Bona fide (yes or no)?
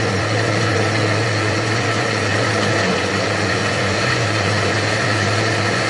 no